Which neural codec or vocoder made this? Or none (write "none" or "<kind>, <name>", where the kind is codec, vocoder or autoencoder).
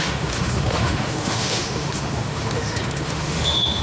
autoencoder, DAC-VAE